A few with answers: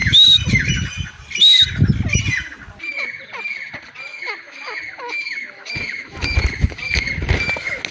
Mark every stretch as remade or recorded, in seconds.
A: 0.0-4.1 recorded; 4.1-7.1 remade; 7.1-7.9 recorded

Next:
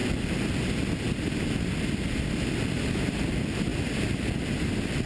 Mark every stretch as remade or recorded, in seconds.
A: 0.0-5.1 recorded

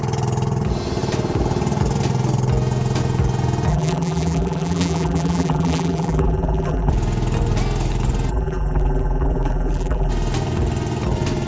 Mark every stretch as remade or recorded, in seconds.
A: 0.0-3.7 recorded; 3.7-6.9 remade; 6.9-8.3 recorded; 8.3-10.1 remade; 10.1-11.5 recorded